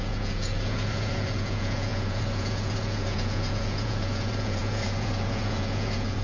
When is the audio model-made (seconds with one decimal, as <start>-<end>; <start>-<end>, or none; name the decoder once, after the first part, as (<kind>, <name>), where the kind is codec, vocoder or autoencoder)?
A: 0.0-6.2 (vocoder, Vocos)